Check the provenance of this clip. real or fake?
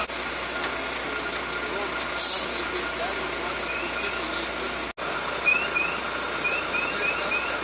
real